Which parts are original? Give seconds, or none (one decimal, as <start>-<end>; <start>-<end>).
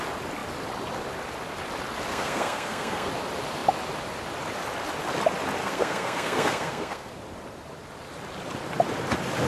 0.0-2.1; 3.1-5.6; 7.1-9.5